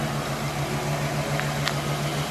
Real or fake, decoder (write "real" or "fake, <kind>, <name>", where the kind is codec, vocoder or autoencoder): real